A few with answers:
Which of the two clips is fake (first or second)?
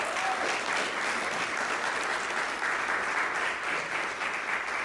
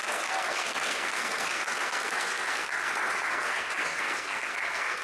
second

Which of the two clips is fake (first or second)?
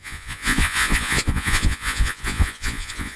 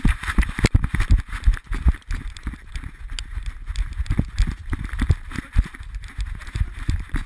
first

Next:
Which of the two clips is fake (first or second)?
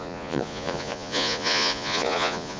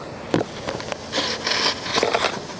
first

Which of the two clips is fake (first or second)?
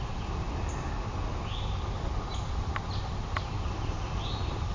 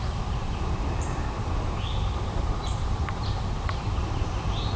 second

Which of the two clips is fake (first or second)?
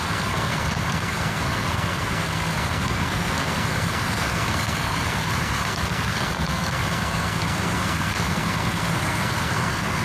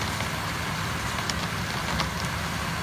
first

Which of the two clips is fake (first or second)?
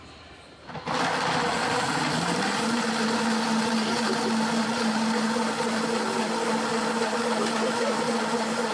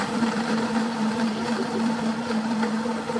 second